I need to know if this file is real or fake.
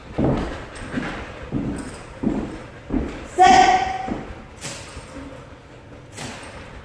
real